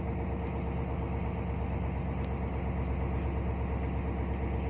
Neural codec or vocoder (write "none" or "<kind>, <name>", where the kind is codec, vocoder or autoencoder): none